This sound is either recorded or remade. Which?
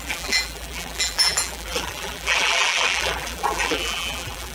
remade